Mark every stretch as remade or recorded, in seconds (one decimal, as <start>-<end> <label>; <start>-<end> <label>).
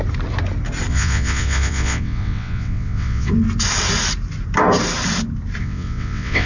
0.0-0.9 recorded; 0.9-3.3 remade; 3.3-5.6 recorded; 5.6-6.5 remade